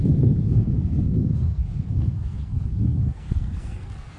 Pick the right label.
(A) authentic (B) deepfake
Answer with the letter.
B